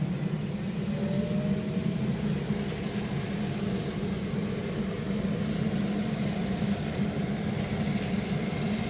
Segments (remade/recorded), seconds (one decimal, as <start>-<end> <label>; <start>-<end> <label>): 0.0-8.9 recorded